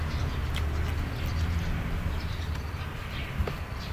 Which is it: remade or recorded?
recorded